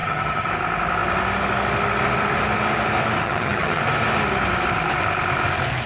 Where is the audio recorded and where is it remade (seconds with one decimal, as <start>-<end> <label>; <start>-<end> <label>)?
0.0-0.5 remade; 0.5-3.2 recorded; 3.2-3.8 remade; 3.8-5.9 recorded